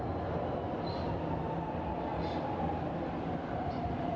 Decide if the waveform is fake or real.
real